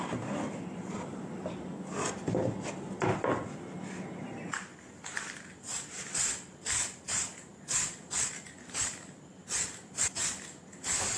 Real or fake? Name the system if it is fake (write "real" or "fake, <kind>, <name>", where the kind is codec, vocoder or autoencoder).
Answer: real